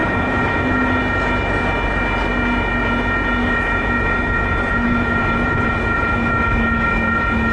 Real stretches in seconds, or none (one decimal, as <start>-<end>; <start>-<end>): 1.0-3.4; 6.3-7.5